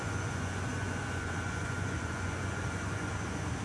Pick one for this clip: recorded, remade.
remade